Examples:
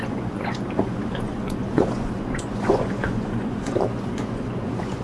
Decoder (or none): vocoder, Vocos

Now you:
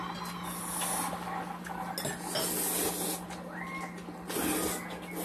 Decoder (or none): none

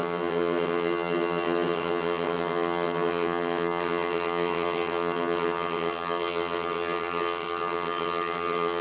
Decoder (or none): vocoder, HiFi-GAN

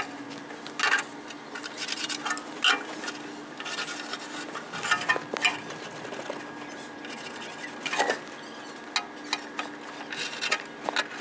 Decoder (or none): none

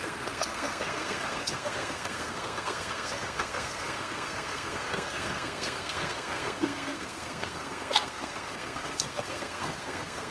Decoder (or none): codec, SNAC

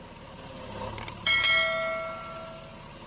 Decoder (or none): none